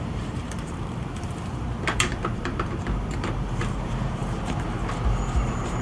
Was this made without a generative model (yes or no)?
no